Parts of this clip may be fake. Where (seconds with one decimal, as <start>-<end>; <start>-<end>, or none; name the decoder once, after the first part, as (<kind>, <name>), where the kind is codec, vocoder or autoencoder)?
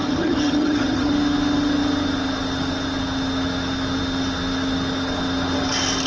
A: 0.0-1.1 (vocoder, HiFi-GAN)